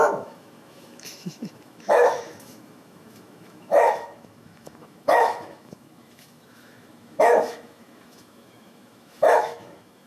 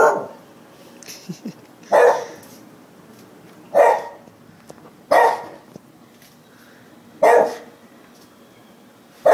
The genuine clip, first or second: second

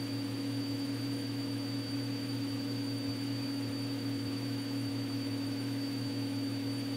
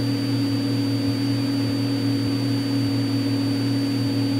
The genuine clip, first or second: second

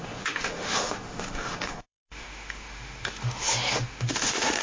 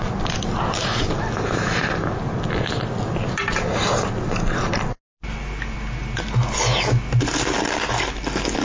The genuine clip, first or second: second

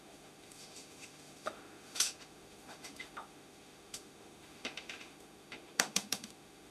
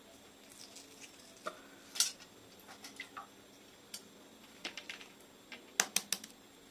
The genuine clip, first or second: second